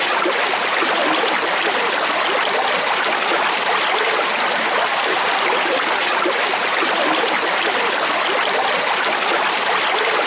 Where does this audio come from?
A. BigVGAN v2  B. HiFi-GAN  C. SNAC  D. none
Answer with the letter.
D